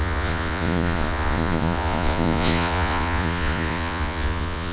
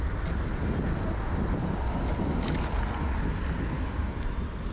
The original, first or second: second